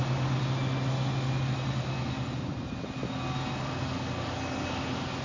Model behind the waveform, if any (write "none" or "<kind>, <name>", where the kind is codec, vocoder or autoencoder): none